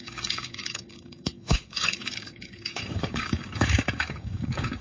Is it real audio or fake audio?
fake